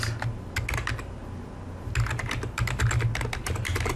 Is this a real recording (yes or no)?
yes